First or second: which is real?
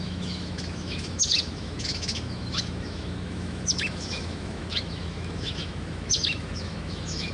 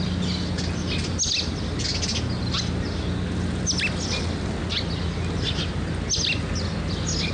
second